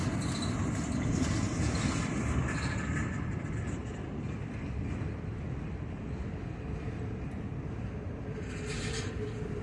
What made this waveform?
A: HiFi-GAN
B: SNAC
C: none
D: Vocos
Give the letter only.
C